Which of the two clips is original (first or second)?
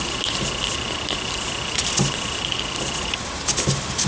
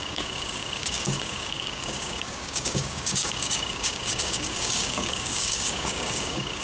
first